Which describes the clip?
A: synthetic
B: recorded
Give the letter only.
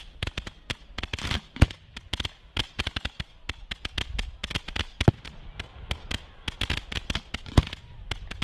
B